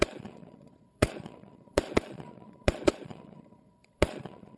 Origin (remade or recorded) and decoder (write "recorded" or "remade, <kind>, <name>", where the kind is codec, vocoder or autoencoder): remade, vocoder, Vocos